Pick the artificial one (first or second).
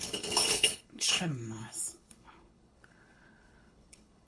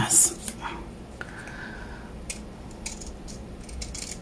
first